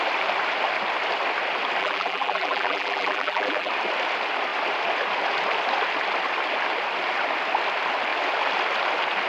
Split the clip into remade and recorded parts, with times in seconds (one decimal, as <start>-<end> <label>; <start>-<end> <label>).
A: 0.0-1.8 recorded; 1.8-3.7 remade; 3.7-9.3 recorded